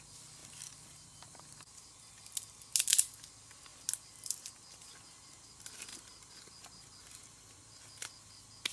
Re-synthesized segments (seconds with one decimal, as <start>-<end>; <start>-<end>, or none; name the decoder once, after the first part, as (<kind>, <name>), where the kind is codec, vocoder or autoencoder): 0.4-2.1 (vocoder, BigVGAN v2)